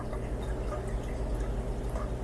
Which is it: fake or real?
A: real